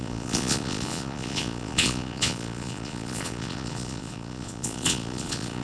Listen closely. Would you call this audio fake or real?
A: fake